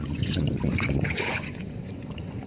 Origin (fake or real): fake